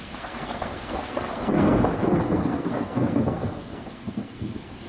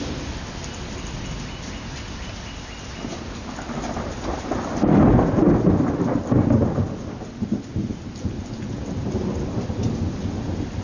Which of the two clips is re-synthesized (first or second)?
first